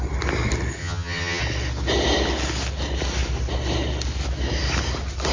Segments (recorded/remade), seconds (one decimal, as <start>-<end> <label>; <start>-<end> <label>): 0.0-0.8 recorded; 0.8-1.4 remade; 1.4-5.3 recorded